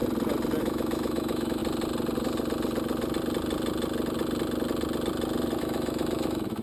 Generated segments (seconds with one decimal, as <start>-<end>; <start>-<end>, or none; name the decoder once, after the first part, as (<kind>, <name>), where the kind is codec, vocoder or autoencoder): 0.6-1.6 (autoencoder, DAC-VAE); 5.6-6.6